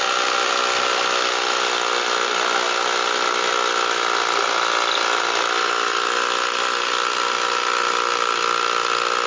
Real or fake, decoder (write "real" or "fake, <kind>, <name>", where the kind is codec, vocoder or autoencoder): real